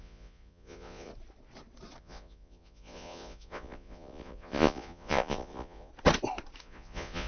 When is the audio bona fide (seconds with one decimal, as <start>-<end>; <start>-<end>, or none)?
1.1-2.0; 5.9-6.6